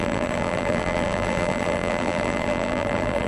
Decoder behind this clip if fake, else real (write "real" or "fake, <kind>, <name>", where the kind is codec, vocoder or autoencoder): fake, vocoder, BigVGAN v2